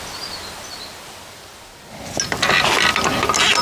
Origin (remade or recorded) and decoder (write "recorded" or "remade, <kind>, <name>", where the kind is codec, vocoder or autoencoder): recorded